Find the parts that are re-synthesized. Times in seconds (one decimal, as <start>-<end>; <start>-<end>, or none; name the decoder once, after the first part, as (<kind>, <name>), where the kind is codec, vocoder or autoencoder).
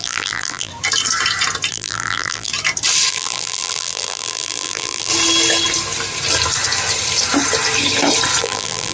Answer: 0.0-0.7 (vocoder, BigVGAN v2); 1.7-2.5; 3.1-5.1; 8.4-8.9